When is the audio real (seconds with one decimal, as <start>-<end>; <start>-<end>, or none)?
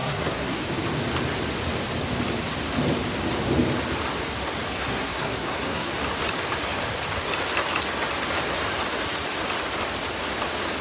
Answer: 0.6-4.7; 5.9-10.8